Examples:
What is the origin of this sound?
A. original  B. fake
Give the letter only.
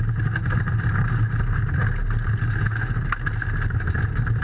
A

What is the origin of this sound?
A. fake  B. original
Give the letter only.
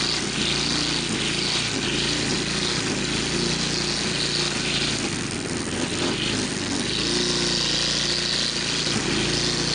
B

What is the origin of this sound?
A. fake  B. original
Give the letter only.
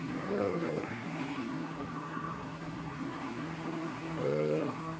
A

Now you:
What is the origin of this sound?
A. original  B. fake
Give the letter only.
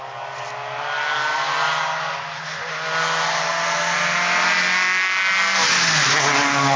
A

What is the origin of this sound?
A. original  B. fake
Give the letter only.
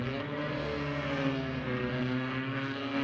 B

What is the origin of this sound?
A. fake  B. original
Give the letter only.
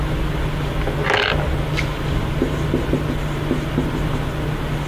B